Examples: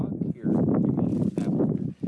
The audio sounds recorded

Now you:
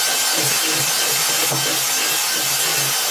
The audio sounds recorded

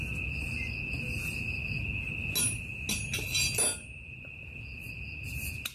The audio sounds recorded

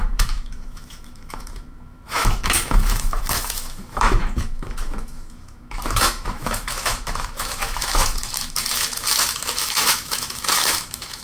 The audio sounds remade